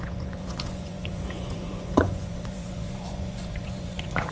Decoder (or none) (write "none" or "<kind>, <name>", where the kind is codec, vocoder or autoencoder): vocoder, Vocos